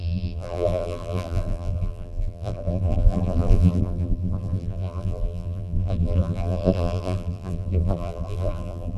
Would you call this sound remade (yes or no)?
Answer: yes